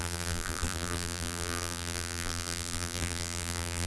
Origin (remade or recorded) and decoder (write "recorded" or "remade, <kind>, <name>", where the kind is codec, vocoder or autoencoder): remade, vocoder, BigVGAN v2